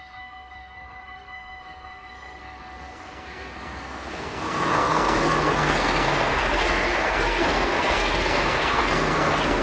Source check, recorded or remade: remade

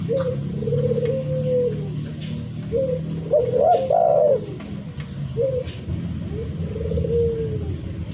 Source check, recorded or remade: recorded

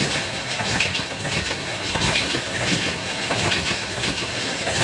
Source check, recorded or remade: remade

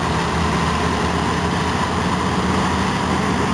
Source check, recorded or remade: recorded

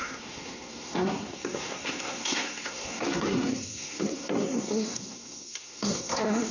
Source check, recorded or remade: remade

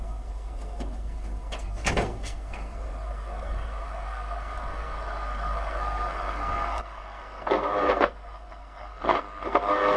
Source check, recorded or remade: remade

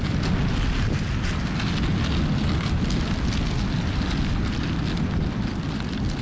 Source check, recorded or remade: recorded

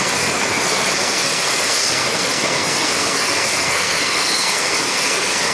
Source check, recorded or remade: remade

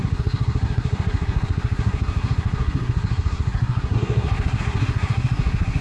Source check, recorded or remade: remade